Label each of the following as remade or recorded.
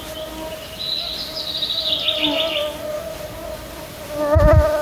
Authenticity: remade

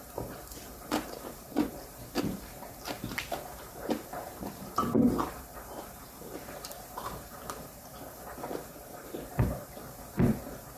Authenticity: remade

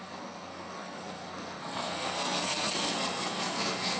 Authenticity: remade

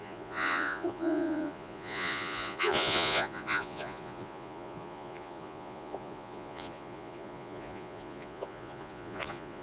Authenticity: remade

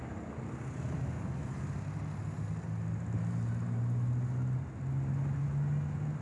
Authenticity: recorded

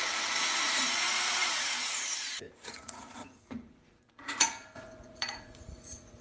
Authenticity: remade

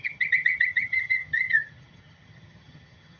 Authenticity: remade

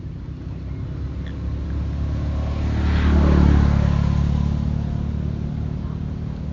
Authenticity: recorded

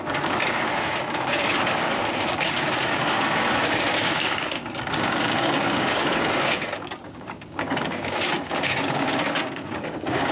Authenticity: remade